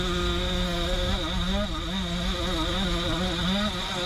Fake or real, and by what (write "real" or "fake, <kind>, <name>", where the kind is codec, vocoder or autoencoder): real